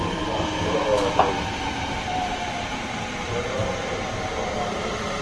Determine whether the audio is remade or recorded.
remade